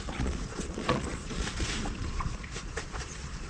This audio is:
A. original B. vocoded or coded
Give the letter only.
B